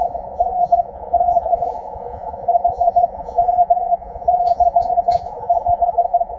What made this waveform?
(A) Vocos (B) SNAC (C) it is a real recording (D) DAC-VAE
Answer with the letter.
A